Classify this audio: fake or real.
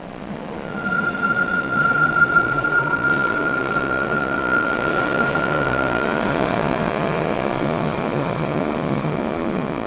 fake